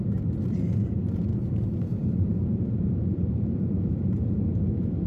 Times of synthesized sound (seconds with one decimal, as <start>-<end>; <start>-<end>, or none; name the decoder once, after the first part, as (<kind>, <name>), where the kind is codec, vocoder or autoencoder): 1.3-4.4 (vocoder, BigVGAN v2)

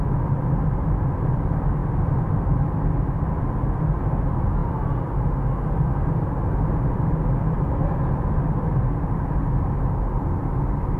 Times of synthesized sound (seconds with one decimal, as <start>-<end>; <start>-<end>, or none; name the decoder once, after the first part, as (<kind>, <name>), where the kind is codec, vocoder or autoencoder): none